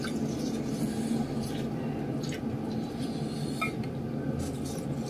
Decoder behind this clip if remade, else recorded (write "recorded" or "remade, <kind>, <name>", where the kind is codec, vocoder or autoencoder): recorded